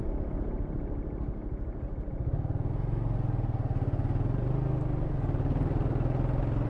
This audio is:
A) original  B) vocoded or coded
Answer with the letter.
A